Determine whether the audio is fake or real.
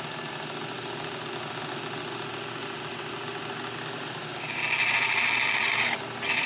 real